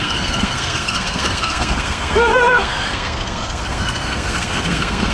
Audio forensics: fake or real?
fake